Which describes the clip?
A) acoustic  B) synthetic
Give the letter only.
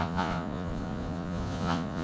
B